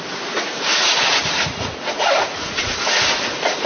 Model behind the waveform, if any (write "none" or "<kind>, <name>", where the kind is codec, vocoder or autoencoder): vocoder, Vocos